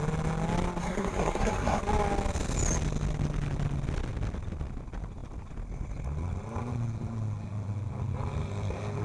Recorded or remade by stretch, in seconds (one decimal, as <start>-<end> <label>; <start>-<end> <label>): 0.0-0.8 recorded; 0.8-1.8 remade; 1.8-9.0 recorded